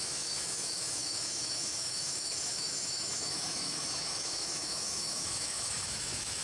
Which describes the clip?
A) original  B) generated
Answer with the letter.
B